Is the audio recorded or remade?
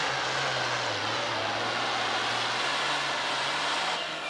recorded